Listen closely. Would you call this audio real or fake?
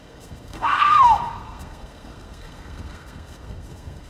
fake